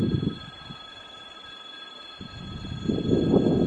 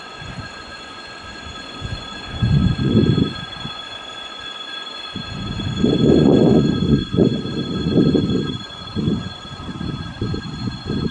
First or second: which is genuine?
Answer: first